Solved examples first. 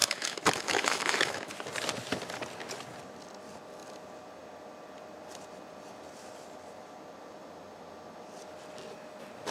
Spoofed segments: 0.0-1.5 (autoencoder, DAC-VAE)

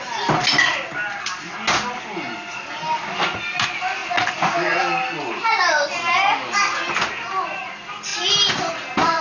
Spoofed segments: none

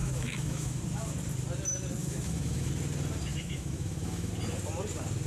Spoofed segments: 0.0-0.8 (autoencoder, DAC-VAE); 2.0-2.7; 3.3-4.3

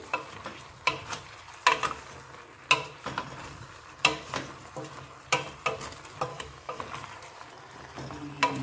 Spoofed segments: 6.3-6.8 (autoencoder, DAC-VAE)

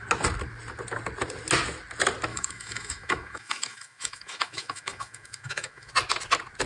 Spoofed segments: 2.3-5.9 (autoencoder, DAC-VAE)

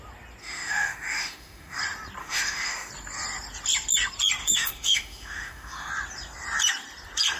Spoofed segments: 0.4-1.8 (autoencoder, DAC-VAE); 2.2-2.9; 4.4-5.9

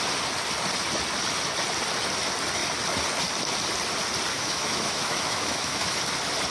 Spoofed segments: 4.3-6.0 (autoencoder, DAC-VAE)

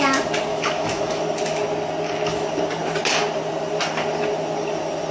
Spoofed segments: 0.5-1.2 (autoencoder, DAC-VAE)